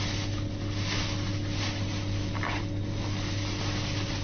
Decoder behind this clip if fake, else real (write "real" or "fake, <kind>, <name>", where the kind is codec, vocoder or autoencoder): real